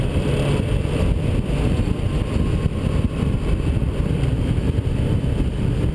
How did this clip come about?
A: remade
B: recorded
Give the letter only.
A